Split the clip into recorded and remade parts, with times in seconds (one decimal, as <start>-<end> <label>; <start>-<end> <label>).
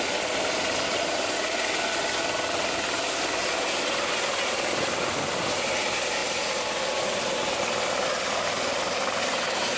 0.0-9.8 recorded